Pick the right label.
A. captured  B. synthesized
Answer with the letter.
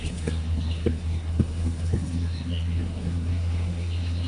B